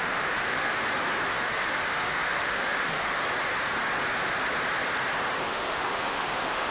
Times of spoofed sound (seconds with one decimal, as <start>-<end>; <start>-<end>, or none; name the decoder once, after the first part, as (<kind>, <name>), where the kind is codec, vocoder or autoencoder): 0.0-0.7 (autoencoder, DAC-VAE); 1.3-3.2; 5.5-6.7

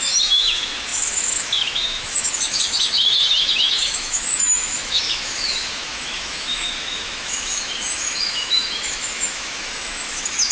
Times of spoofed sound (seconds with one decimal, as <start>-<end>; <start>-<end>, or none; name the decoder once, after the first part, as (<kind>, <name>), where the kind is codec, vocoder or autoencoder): 0.0-10.5 (autoencoder, DAC-VAE)

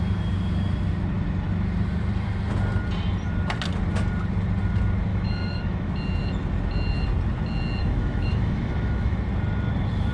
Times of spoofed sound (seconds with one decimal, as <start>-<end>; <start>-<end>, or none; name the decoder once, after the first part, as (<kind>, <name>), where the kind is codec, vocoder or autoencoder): 5.1-5.9 (autoencoder, DAC-VAE); 7.8-9.2

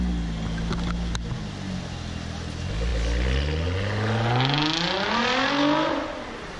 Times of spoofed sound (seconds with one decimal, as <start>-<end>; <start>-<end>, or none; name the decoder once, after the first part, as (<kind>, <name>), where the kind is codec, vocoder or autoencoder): none